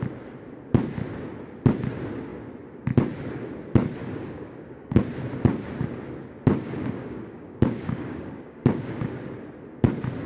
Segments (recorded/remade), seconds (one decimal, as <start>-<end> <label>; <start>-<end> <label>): 0.0-4.0 recorded; 4.0-5.0 remade; 5.0-6.5 recorded; 6.5-9.3 remade; 9.3-10.3 recorded